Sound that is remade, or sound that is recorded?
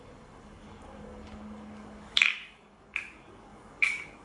remade